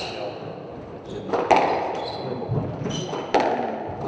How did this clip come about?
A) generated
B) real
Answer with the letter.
B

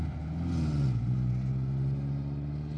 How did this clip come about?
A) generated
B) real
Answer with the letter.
B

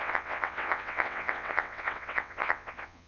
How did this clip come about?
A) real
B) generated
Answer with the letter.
B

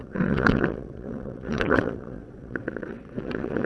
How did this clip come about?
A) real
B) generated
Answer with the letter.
B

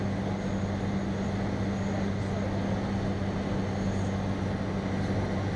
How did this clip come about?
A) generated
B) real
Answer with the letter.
B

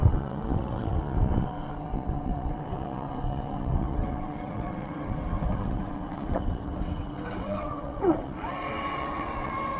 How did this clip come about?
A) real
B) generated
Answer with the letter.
B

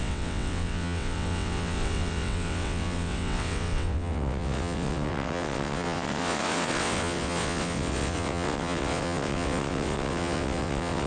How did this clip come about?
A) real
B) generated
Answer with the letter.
B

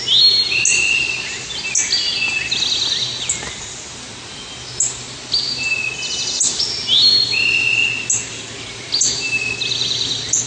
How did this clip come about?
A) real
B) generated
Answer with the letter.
A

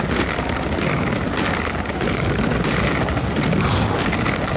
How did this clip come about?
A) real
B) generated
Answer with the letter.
A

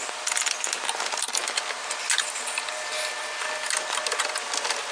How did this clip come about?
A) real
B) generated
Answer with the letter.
A